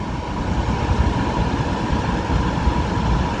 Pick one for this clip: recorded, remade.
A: recorded